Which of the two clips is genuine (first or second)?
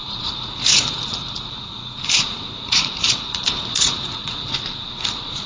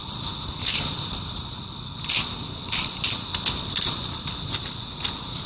second